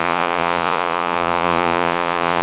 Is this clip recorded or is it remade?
remade